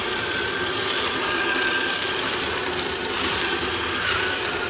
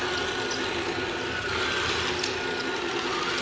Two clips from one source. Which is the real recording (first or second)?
second